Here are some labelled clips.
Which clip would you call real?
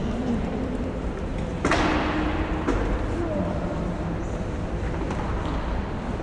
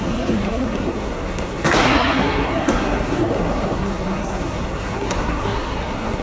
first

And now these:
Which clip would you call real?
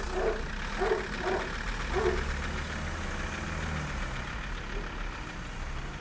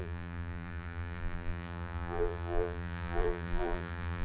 first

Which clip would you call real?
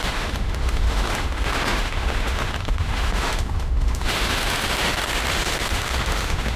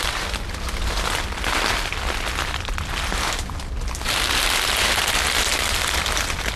second